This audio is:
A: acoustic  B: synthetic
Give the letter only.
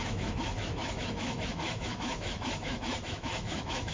B